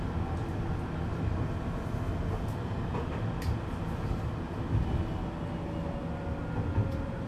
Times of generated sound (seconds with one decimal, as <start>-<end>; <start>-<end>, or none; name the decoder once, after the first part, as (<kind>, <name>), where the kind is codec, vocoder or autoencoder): none